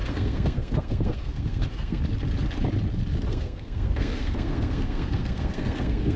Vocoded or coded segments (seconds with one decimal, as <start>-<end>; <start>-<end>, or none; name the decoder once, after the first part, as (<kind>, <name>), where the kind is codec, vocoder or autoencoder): 0.0-2.0 (codec, SNAC); 3.3-6.2